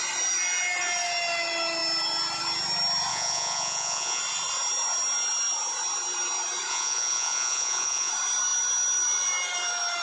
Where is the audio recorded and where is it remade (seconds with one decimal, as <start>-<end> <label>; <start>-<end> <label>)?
0.0-3.1 recorded; 3.1-4.2 remade; 4.2-6.7 recorded; 6.7-8.1 remade; 8.1-10.0 recorded